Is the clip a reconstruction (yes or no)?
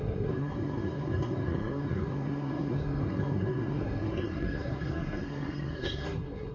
yes